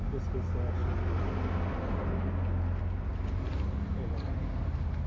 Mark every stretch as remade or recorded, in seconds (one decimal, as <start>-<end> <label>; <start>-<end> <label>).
0.0-5.1 recorded